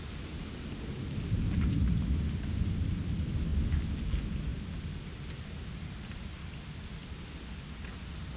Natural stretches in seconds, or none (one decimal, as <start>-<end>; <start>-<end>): 0.0-8.4